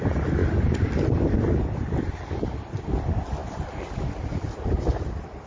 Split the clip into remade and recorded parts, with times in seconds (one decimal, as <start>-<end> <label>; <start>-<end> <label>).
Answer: 0.0-5.5 recorded